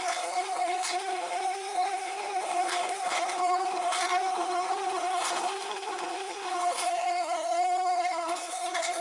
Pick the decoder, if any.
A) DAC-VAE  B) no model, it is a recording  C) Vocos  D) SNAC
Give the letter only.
D